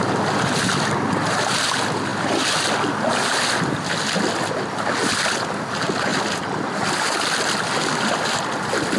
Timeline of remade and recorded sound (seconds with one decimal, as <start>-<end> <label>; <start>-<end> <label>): 0.0-9.0 recorded